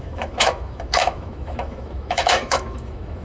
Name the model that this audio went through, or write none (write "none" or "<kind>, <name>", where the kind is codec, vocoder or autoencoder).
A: autoencoder, DAC-VAE